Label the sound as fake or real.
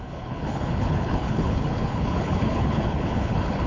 fake